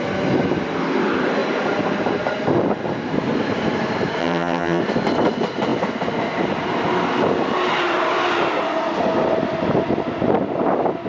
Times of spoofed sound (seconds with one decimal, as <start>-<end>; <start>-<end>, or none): 4.2-4.8